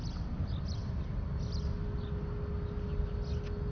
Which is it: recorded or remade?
recorded